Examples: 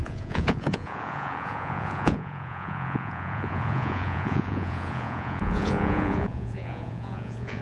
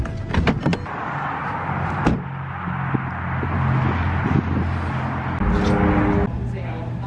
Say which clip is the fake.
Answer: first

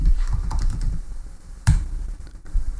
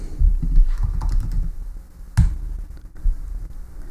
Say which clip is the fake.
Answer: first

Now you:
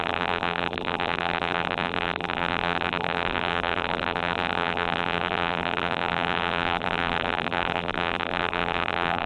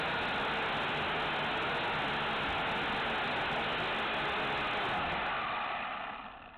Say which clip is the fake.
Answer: first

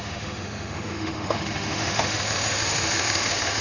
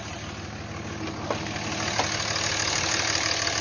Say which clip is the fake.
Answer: first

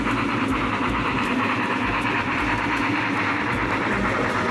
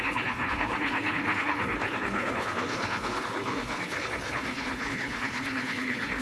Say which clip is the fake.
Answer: second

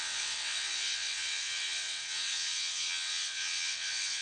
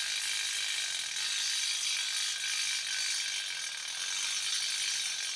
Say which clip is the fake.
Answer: first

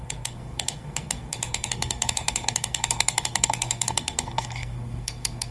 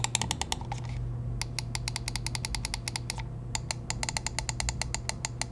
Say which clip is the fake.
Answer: first